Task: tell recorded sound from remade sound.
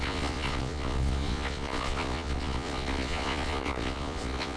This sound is remade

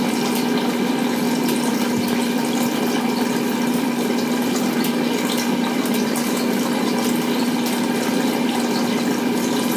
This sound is recorded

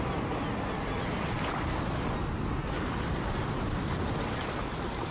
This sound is recorded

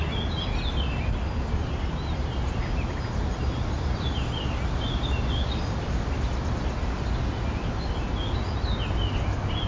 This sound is recorded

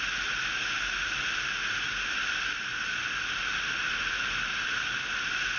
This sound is recorded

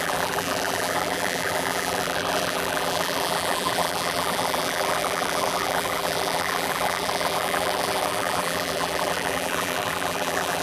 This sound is remade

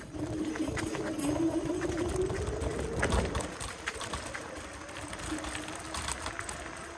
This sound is recorded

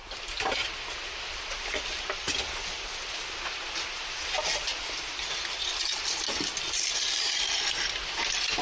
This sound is recorded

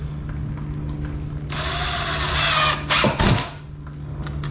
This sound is recorded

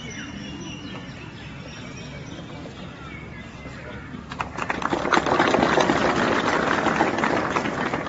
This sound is recorded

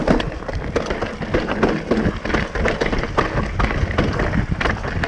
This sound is recorded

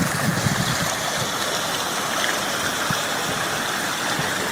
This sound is recorded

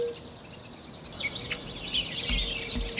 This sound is recorded